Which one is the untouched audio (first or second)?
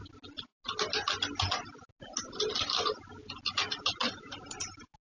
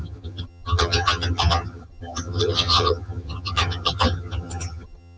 first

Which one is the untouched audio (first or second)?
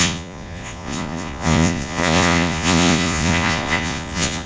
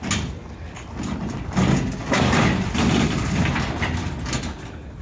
second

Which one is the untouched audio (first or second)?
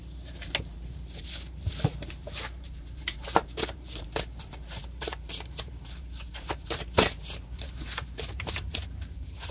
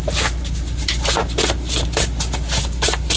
second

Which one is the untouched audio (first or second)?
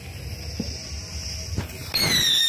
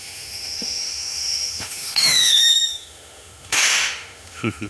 first